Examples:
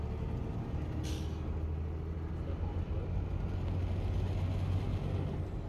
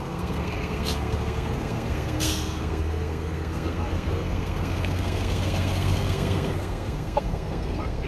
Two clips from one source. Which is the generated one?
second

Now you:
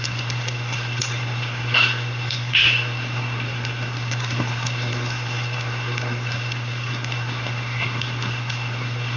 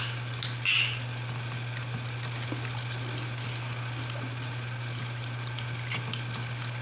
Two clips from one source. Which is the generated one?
first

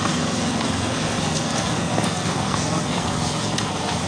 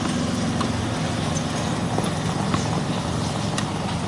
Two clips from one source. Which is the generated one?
first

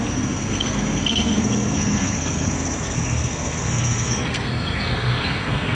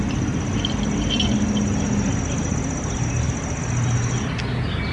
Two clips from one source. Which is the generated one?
first